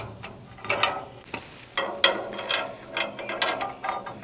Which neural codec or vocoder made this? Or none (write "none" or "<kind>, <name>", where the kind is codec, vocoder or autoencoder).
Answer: none